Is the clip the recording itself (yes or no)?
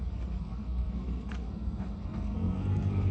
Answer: no